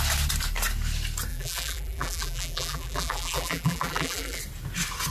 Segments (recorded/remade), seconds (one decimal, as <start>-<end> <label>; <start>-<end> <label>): 0.0-1.3 recorded; 1.3-4.4 remade; 4.4-5.1 recorded